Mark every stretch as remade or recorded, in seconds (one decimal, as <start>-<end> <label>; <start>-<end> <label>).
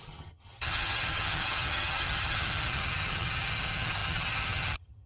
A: 0.0-5.1 remade